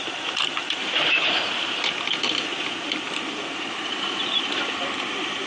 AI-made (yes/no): yes